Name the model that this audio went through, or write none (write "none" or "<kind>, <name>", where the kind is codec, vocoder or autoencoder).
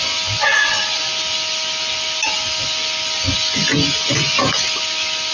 none